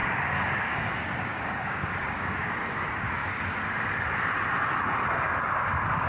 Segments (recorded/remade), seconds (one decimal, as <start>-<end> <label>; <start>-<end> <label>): 0.0-3.2 remade; 3.2-5.4 recorded; 5.4-6.1 remade